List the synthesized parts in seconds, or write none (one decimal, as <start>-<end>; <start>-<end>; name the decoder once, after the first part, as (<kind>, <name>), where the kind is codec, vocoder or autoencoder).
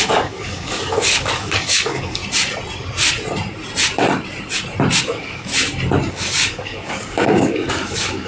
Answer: 0.0-2.2 (codec, DAC); 5.0-5.5; 6.1-8.3